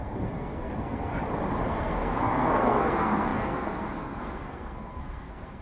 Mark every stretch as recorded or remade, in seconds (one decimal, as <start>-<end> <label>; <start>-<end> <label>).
0.0-1.1 remade; 1.1-1.7 recorded; 1.7-5.6 remade